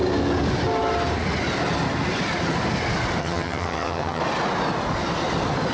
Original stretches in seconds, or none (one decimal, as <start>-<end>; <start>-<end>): 0.0-3.2; 4.2-5.7